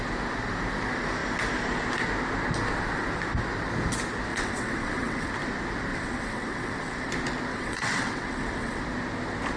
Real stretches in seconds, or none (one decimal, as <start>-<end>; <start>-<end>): 0.0-4.3; 5.3-5.9; 7.1-7.5; 8.8-9.6